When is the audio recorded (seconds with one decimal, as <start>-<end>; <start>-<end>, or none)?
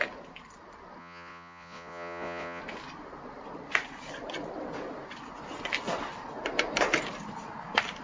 0.0-1.0; 2.6-8.0